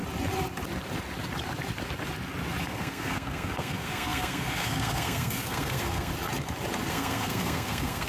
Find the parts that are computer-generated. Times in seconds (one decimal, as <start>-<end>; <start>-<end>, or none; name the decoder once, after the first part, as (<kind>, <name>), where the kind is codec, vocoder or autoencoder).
2.6-6.1 (codec, SNAC); 6.9-8.1

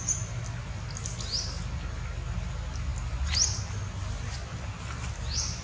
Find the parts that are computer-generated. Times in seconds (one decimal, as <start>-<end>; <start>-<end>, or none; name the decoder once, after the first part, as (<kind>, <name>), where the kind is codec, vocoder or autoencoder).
none

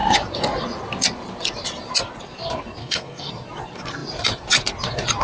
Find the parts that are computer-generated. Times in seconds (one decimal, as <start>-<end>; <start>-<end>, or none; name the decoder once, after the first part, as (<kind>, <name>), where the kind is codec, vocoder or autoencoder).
2.8-3.3 (codec, SNAC)